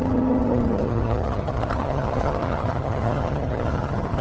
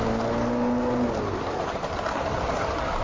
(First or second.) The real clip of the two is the second